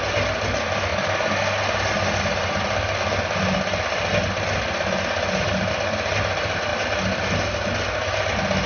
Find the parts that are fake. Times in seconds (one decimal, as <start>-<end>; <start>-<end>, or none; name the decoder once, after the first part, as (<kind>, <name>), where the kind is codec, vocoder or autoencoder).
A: none